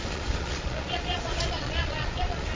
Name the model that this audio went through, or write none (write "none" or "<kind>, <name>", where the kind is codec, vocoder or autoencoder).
vocoder, Vocos